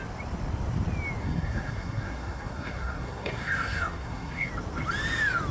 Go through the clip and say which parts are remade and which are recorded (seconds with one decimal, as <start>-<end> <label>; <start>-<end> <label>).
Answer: 0.0-1.2 recorded; 1.2-4.5 remade; 4.5-5.5 recorded